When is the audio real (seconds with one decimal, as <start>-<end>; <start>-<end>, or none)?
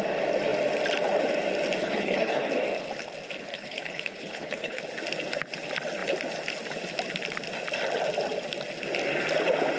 0.0-1.8; 2.5-3.5; 4.8-9.8